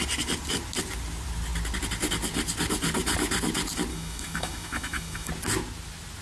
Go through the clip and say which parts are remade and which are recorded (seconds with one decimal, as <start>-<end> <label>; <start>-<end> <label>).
0.0-3.9 recorded; 3.9-5.3 remade; 5.3-6.2 recorded